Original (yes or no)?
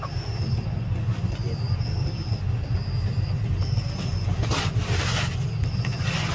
yes